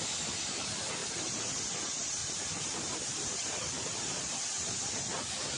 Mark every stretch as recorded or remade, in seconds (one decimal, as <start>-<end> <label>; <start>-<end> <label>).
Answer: 0.0-2.2 recorded; 2.2-4.9 remade; 4.9-5.6 recorded